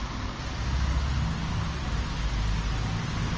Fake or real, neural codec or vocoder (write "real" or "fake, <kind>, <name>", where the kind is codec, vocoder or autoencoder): real